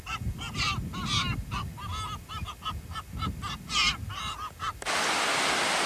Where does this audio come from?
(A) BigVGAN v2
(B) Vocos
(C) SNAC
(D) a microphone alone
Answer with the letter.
D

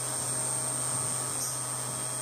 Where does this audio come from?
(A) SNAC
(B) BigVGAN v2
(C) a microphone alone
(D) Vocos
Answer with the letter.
C